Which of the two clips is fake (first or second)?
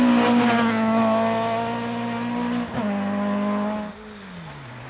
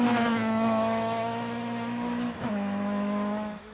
second